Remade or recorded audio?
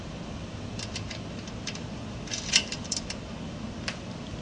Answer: remade